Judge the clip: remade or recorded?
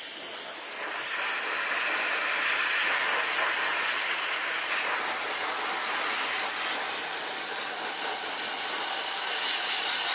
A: recorded